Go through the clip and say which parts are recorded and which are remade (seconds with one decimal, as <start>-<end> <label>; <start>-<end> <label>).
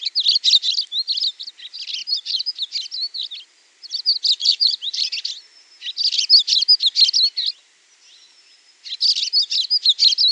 0.0-2.0 recorded; 2.0-2.5 remade; 2.5-4.4 recorded; 4.4-5.1 remade; 5.1-10.3 recorded